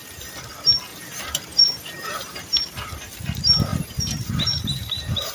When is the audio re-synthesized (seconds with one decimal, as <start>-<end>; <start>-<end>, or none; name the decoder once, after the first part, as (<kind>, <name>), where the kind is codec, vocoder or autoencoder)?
0.9-3.0 (vocoder, BigVGAN v2); 3.7-5.3